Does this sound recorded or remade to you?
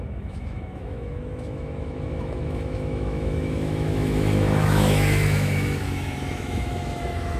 remade